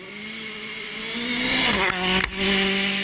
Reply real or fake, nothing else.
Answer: real